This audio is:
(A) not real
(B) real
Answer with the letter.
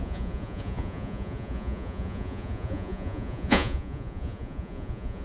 A